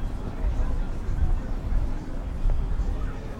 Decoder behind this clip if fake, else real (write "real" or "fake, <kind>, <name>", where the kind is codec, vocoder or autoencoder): real